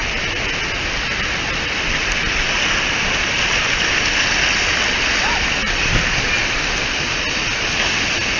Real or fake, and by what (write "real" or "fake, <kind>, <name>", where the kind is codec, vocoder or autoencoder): real